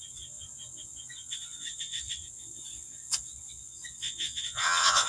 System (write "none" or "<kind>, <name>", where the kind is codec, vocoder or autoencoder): vocoder, WaveNeXt